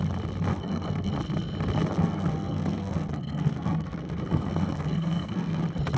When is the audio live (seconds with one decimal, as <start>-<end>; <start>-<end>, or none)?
0.0-0.5; 1.1-2.0; 5.6-6.0